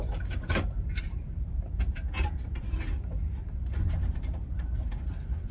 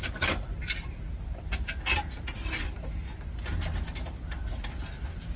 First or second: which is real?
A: second